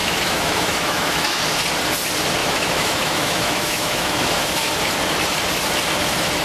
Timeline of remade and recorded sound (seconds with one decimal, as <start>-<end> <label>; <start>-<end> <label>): 0.0-1.4 remade; 1.4-2.4 recorded; 2.4-4.7 remade; 4.7-6.4 recorded